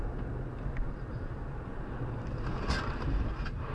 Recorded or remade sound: recorded